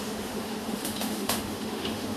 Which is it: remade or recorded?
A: remade